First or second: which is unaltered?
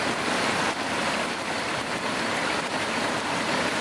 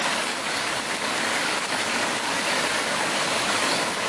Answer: first